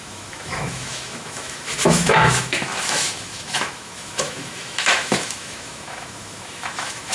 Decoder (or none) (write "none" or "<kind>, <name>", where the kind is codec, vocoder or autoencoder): autoencoder, DAC-VAE